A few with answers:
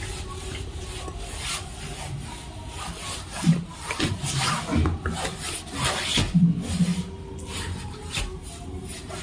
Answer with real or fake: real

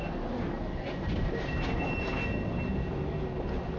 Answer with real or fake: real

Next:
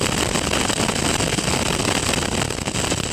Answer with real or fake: real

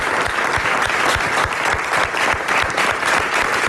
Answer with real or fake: real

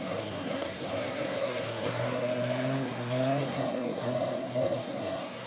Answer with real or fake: fake